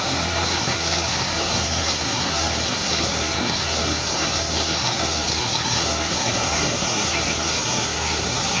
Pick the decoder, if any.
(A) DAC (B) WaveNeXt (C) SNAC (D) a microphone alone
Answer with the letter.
C